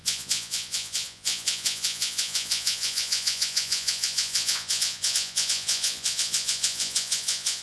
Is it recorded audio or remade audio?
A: remade